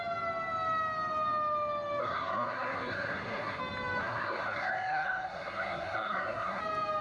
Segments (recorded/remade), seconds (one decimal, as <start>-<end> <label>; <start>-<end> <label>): 0.0-2.0 recorded; 2.0-3.6 remade; 3.6-4.0 recorded; 4.0-6.6 remade; 6.6-7.0 recorded